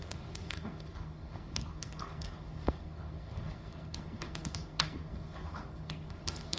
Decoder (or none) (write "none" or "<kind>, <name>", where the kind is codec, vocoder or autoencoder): codec, SNAC